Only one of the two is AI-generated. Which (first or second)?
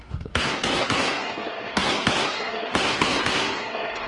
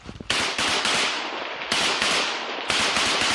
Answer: first